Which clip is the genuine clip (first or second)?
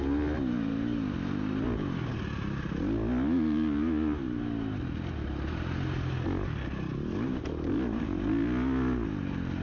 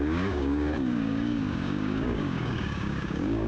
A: first